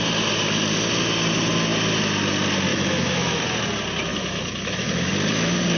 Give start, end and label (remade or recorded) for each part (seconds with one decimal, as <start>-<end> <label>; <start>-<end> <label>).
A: 0.0-2.7 recorded; 2.7-3.4 remade; 3.4-4.1 recorded; 4.1-5.1 remade; 5.1-5.8 recorded